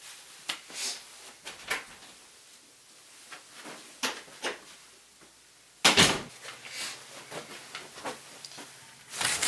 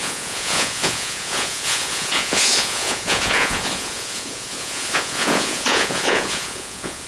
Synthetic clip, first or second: second